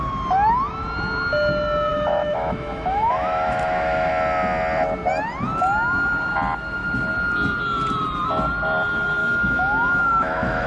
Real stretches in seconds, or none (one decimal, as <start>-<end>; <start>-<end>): 0.0-1.9; 4.1-9.2